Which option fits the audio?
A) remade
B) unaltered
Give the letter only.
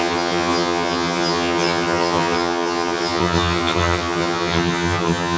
A